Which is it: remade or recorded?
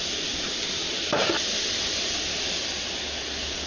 recorded